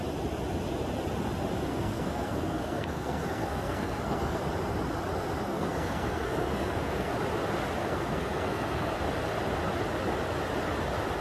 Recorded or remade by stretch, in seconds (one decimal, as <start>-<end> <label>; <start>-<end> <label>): 0.0-1.7 recorded; 1.7-4.4 remade; 4.4-5.5 recorded; 5.5-7.1 remade; 7.1-7.8 recorded; 7.8-8.9 remade; 8.9-11.2 recorded